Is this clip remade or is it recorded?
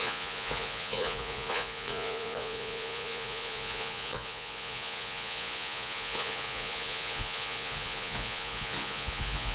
remade